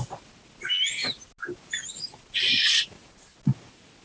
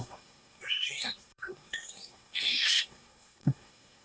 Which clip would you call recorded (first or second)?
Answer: first